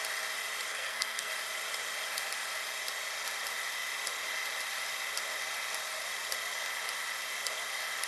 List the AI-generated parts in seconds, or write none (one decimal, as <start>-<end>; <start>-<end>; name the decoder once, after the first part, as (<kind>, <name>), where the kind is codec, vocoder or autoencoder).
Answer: 0.7-1.3 (codec, SNAC)